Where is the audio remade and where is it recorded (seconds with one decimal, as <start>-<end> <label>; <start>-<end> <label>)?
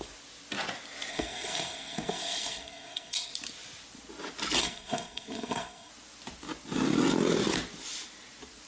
0.0-1.1 recorded; 1.1-3.3 remade; 3.3-4.6 recorded; 4.6-5.9 remade; 5.9-8.7 recorded